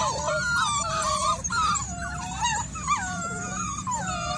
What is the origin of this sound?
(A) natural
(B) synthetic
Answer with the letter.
B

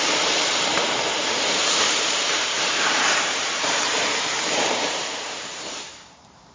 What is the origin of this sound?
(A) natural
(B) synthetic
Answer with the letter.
B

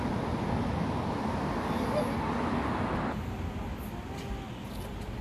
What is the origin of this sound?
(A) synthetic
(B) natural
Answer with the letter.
B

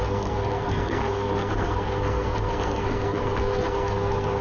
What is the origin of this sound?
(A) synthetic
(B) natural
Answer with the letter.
A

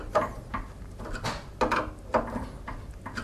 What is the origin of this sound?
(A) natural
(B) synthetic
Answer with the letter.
A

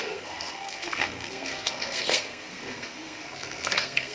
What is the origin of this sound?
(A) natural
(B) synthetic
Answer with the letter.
B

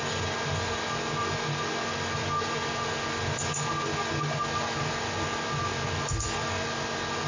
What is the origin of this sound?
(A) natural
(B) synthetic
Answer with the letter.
A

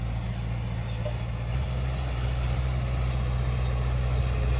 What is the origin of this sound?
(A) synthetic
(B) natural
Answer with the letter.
B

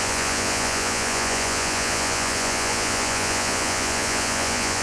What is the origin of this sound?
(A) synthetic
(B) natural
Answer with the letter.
A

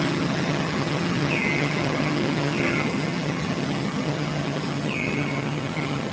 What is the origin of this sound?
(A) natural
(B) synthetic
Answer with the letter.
B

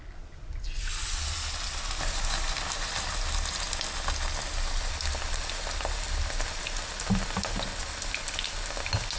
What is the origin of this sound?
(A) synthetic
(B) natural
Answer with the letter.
B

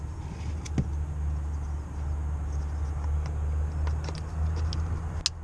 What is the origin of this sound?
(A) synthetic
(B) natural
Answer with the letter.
B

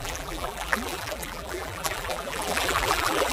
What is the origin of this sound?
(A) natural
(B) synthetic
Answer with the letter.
B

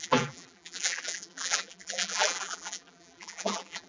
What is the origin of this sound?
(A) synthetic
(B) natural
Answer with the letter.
A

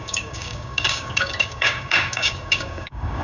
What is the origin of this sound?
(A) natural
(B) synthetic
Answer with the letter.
B